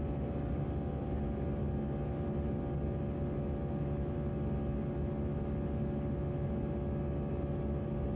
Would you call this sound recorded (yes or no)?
yes